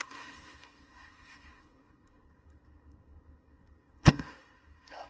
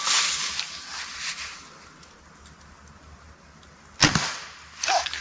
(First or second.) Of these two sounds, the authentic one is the second